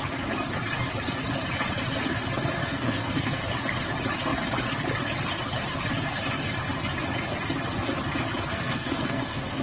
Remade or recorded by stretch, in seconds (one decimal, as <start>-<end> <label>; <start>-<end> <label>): 0.0-2.6 recorded; 2.6-3.4 remade; 3.4-8.5 recorded; 8.5-9.6 remade